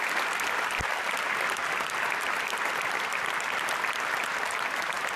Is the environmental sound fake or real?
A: real